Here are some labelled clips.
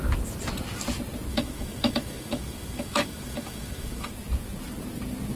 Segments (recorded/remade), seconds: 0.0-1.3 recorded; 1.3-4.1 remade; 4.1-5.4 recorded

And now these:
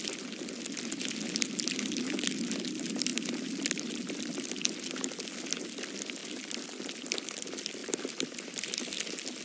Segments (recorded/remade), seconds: 0.0-3.1 recorded; 3.1-4.5 remade; 4.5-6.2 recorded; 6.2-7.0 remade; 7.0-7.8 recorded; 7.8-9.0 remade; 9.0-9.4 recorded